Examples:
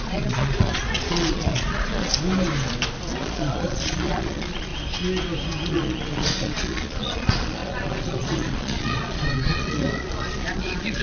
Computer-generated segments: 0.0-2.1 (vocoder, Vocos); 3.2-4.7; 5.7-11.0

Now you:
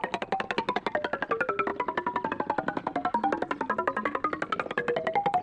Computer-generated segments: none

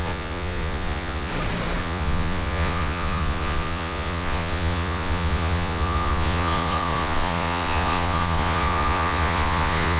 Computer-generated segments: 0.0-1.3 (vocoder, Vocos); 1.8-10.0

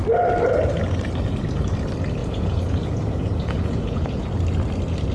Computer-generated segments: 2.2-4.2 (vocoder, Vocos)

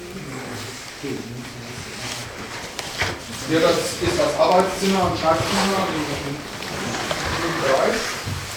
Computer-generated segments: none

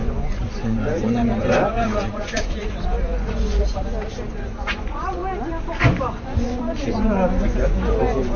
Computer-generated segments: 0.0-3.8 (vocoder, Vocos); 4.3-5.2; 5.8-8.4

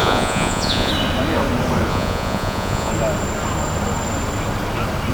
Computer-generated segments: 0.0-0.9 (vocoder, Vocos); 1.9-2.9